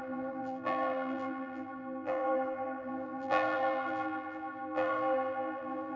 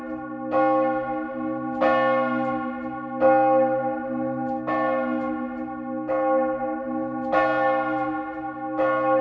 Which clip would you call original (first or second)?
second